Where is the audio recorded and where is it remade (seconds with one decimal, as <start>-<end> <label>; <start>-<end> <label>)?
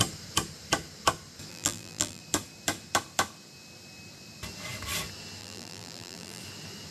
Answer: 0.0-1.5 recorded; 1.5-2.2 remade; 2.2-5.4 recorded; 5.4-6.4 remade; 6.4-6.9 recorded